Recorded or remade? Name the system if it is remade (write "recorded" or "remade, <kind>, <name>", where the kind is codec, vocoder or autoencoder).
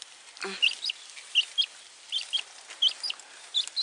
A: recorded